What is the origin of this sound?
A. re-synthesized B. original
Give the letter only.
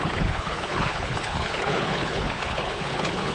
A